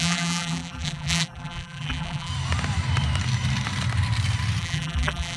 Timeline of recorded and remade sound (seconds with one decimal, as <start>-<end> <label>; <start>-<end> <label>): 0.0-2.3 remade; 2.3-4.6 recorded; 4.6-5.4 remade

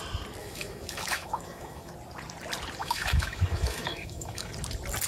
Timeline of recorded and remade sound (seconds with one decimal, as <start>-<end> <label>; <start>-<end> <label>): 0.0-0.4 recorded; 0.4-1.9 remade; 1.9-2.8 recorded; 2.8-4.5 remade; 4.5-5.1 recorded

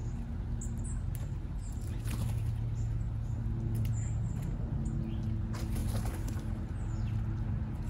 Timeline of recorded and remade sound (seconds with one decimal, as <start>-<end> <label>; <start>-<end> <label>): 0.0-7.9 recorded

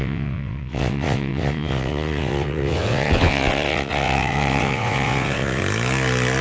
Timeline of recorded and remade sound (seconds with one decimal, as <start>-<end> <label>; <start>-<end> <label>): 0.0-5.6 remade; 5.6-6.4 recorded

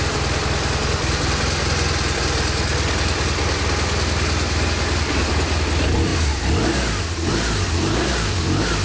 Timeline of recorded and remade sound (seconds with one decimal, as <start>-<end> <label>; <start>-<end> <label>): 0.0-8.8 recorded